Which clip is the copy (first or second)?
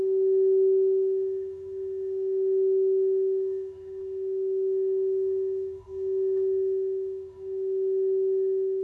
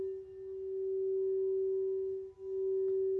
first